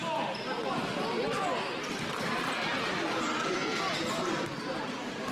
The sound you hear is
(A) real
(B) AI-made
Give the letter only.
A